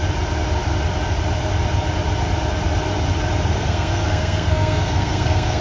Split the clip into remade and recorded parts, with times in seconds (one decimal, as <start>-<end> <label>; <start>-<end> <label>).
0.0-3.5 recorded; 3.5-5.6 remade